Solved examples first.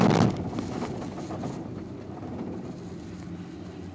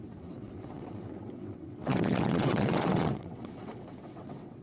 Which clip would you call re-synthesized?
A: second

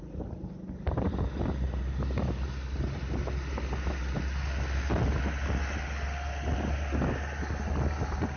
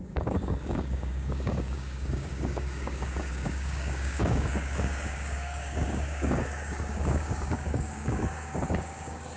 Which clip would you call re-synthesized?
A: second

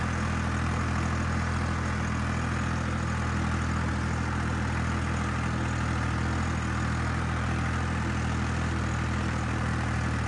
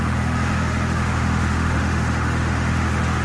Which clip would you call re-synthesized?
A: second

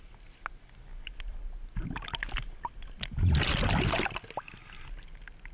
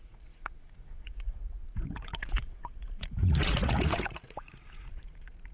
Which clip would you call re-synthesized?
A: second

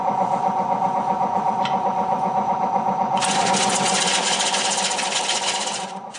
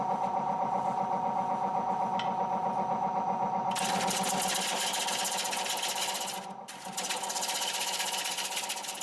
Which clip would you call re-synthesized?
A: first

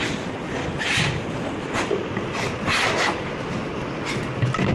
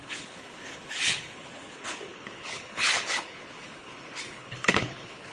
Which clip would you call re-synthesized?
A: second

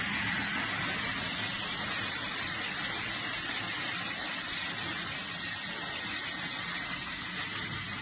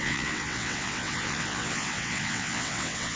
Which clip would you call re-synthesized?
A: second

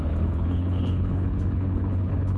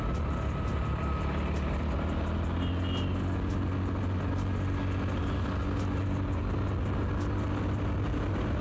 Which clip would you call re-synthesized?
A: first